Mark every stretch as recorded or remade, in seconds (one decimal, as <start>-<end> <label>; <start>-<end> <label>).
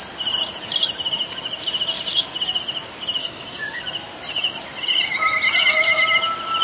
0.0-3.2 recorded; 3.2-3.8 remade; 3.8-6.6 recorded